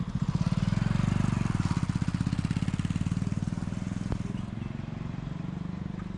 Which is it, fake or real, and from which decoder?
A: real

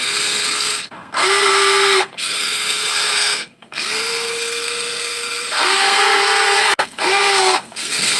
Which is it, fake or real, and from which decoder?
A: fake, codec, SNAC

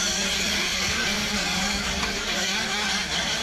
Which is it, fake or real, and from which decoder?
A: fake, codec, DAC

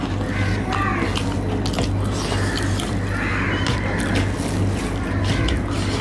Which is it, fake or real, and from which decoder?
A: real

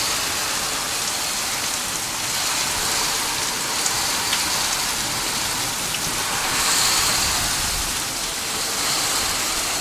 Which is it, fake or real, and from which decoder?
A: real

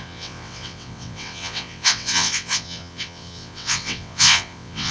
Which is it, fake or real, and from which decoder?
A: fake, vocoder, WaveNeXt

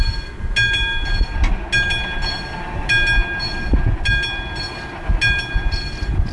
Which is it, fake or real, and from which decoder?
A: real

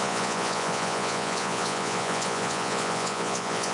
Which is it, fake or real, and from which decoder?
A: fake, vocoder, Vocos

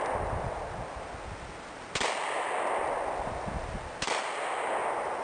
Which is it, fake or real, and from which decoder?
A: real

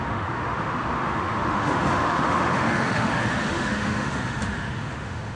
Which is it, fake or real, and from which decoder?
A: fake, autoencoder, DAC-VAE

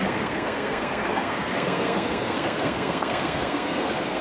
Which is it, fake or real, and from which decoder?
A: fake, codec, SNAC